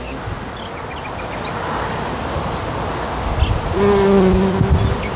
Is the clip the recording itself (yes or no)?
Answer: yes